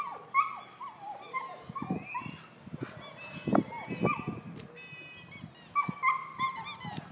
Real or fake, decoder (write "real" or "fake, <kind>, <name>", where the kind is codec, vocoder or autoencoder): real